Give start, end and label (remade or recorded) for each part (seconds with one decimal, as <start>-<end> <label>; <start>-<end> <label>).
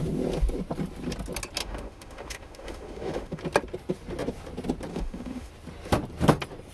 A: 0.0-1.6 recorded; 1.6-3.4 remade; 3.4-4.9 recorded; 4.9-5.5 remade; 5.5-6.7 recorded